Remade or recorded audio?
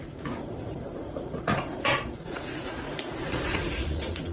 remade